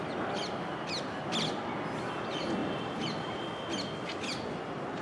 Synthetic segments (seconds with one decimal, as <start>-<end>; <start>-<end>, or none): 2.6-3.4